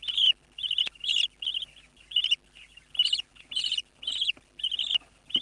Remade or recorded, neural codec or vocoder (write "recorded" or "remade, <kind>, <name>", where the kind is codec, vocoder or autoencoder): recorded